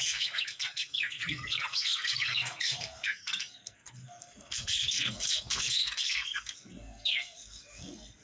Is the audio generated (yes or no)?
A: yes